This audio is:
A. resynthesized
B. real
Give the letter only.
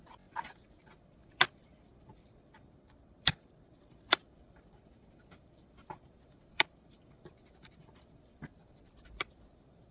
A